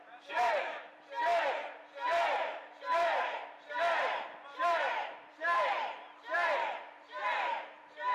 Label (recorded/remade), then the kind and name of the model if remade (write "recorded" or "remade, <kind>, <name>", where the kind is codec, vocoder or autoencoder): remade, vocoder, BigVGAN v2